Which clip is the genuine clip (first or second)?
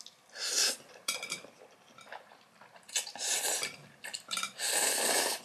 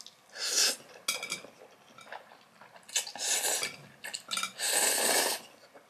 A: second